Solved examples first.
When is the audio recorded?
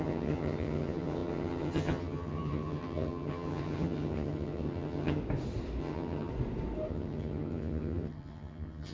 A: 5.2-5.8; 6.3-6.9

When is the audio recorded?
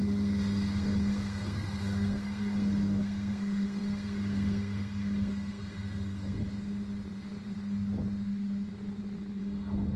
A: 6.4-9.4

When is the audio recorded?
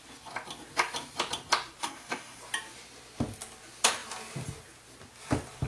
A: 0.0-1.8; 2.4-5.7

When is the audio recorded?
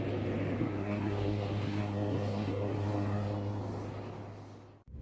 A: 0.0-0.6; 3.6-5.0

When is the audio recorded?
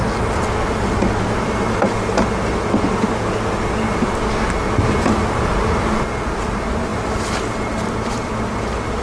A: 0.0-9.0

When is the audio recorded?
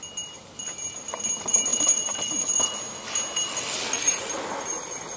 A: 0.0-5.2